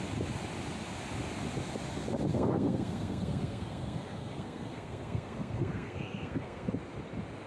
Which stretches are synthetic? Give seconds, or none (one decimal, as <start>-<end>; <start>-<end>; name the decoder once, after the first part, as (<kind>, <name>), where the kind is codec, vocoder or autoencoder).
2.3-6.7 (codec, SNAC)